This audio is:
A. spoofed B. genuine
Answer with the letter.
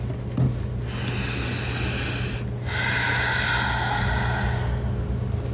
B